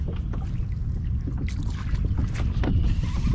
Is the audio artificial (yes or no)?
no